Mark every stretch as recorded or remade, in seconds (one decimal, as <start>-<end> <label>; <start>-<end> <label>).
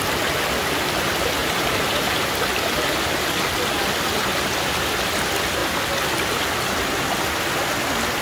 0.0-1.4 recorded; 1.4-2.4 remade; 2.4-8.2 recorded